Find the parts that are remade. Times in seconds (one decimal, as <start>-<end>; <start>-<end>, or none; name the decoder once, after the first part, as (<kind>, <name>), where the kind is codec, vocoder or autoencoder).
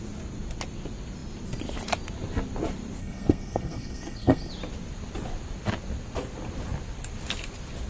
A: 3.0-4.5 (codec, SNAC)